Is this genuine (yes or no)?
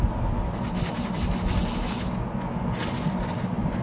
yes